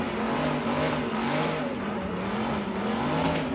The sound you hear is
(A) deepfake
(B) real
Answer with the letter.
B